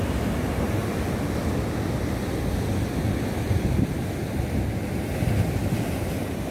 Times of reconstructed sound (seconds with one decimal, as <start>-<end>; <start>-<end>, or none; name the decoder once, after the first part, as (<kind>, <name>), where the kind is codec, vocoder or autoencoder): none